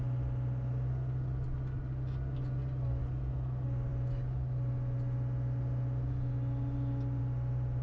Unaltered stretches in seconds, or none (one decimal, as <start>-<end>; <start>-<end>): 0.0-7.8